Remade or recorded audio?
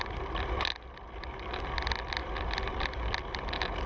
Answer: recorded